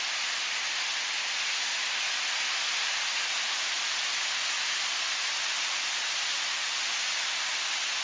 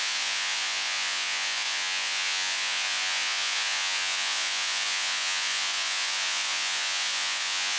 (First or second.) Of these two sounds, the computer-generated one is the second